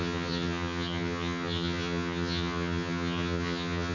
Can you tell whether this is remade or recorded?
remade